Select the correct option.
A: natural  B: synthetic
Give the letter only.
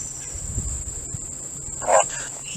A